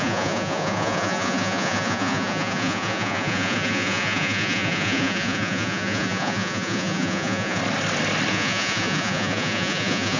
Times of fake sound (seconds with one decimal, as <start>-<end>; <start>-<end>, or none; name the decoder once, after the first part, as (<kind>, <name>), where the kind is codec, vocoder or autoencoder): 0.0-7.6 (vocoder, Vocos); 8.3-10.2

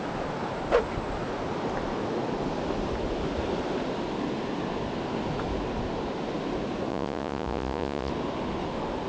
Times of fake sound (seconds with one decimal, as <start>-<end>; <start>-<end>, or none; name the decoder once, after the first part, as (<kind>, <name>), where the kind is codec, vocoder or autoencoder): 6.9-8.1 (vocoder, Vocos)

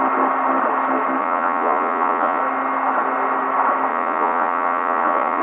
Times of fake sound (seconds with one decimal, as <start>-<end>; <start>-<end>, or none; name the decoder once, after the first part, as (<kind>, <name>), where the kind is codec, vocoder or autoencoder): 1.2-2.4 (vocoder, Vocos); 3.9-5.4

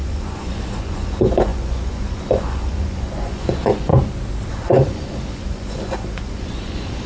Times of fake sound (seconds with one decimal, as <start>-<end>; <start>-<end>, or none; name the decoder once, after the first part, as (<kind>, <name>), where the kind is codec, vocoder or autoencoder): 0.0-3.9 (vocoder, Vocos); 4.5-7.1

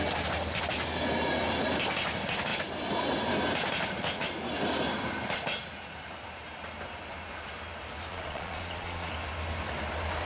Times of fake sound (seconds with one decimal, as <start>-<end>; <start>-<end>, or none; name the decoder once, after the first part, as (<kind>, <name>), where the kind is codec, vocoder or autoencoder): 8.1-9.1 (vocoder, Vocos)